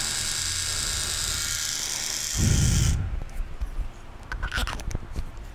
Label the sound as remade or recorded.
recorded